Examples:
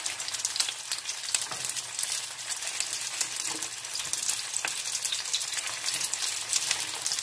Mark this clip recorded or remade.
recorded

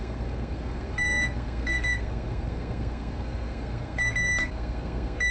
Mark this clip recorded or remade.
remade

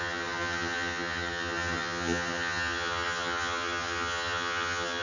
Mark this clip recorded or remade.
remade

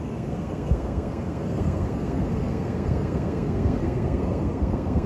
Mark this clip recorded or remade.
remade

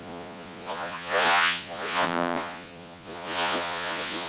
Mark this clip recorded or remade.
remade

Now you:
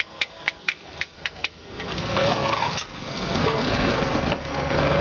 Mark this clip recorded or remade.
remade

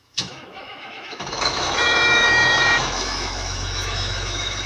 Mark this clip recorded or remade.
remade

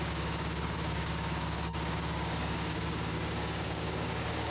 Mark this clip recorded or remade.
remade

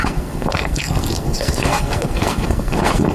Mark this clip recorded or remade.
remade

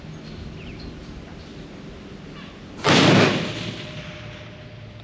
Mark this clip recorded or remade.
recorded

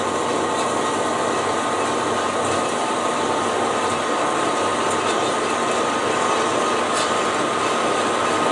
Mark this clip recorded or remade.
recorded